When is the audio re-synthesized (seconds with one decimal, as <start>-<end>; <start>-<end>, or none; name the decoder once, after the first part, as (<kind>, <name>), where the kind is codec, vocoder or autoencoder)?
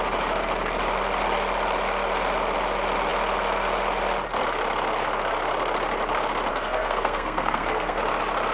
6.5-8.0 (codec, SNAC)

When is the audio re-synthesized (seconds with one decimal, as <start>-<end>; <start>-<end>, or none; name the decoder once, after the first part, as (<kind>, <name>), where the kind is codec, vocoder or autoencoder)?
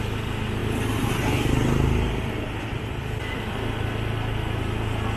none